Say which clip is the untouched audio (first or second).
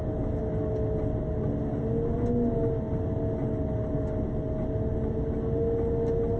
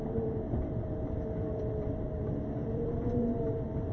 first